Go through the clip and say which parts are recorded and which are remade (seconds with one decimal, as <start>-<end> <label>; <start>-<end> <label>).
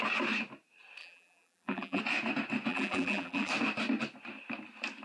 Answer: 0.0-1.0 recorded; 1.0-2.0 remade; 2.0-2.7 recorded; 2.7-3.5 remade; 3.5-5.0 recorded